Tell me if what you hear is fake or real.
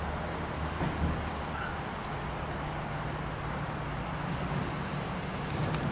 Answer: real